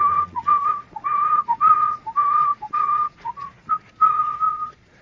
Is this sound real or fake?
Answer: fake